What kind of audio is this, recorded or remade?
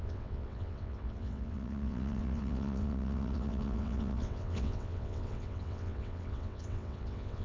remade